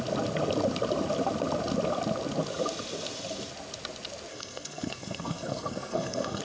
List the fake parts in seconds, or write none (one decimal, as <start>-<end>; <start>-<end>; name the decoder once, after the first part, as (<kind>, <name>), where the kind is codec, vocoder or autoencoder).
4.3-6.4 (codec, SNAC)